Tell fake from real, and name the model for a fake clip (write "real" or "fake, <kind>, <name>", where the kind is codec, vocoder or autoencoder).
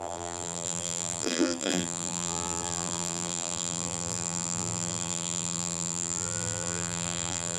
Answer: fake, vocoder, BigVGAN v2